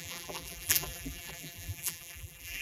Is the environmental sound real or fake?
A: fake